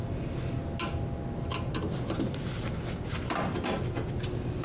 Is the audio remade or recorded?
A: recorded